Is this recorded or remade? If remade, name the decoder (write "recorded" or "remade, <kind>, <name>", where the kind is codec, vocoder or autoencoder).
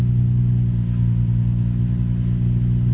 recorded